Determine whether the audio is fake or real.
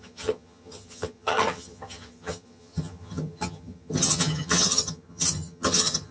fake